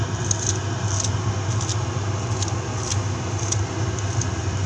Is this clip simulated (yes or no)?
no